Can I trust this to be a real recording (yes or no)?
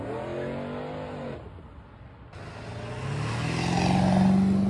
yes